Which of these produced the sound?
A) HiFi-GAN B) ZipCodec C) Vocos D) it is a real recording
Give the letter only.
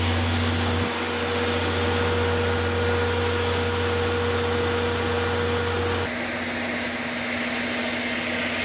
D